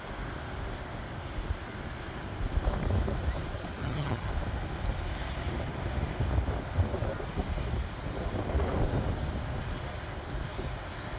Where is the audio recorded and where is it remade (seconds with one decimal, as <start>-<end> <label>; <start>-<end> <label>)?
0.0-3.8 recorded; 3.8-4.3 remade; 4.3-11.2 recorded